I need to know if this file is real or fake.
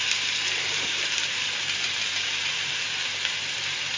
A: real